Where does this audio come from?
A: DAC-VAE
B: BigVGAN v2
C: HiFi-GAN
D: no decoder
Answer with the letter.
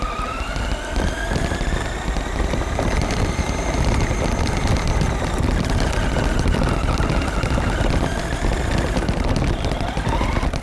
D